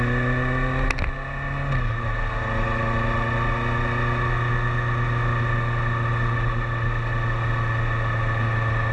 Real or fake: real